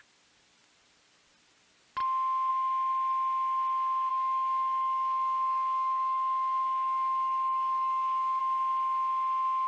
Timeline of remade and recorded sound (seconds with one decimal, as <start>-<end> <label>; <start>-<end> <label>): 0.0-4.1 recorded; 4.1-8.4 remade; 8.4-9.7 recorded